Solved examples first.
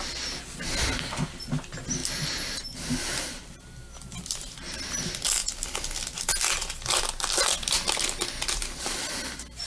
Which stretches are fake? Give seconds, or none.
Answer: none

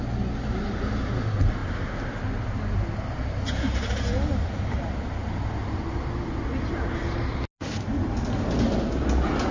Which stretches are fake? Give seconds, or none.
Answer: none